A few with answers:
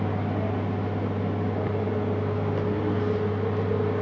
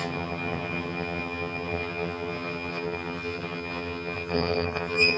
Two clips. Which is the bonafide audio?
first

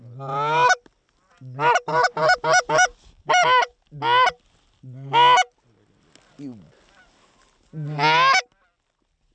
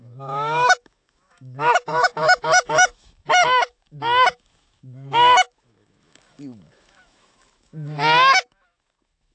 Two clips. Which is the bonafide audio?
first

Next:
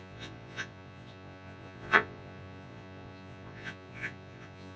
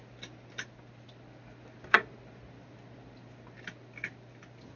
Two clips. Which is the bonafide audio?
second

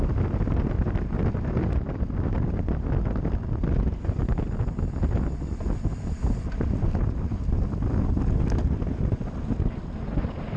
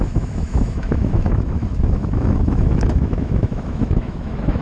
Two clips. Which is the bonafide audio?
first